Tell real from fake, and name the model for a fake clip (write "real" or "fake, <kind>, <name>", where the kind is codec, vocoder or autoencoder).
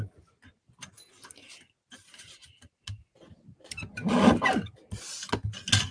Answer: real